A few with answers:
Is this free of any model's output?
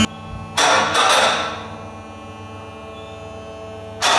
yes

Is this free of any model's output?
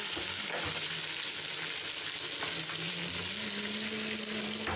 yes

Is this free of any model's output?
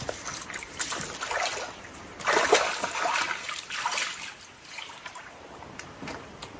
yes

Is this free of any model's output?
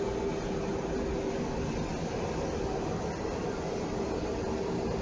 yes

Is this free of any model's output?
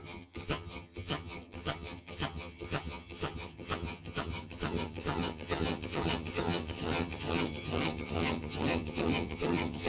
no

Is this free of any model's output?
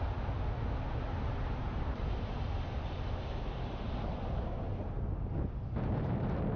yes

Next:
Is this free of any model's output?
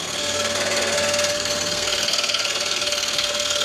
no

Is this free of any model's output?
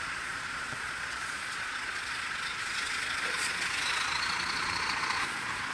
no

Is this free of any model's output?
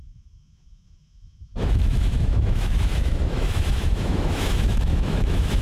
no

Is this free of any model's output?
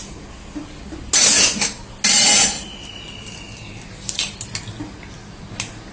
yes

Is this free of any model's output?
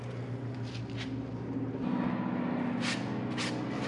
yes